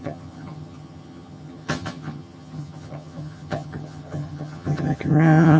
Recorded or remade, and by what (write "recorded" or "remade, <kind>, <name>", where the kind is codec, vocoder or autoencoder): remade, vocoder, HiFi-GAN